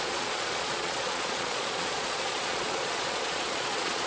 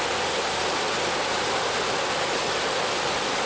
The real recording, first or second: second